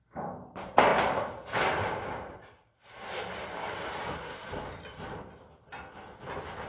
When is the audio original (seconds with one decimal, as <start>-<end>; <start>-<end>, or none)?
0.0-6.7